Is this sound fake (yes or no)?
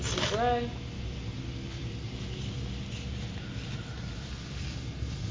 no